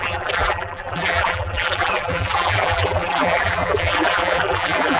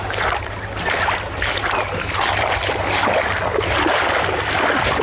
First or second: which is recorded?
second